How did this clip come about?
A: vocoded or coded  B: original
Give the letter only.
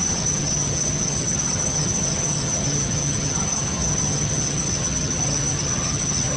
A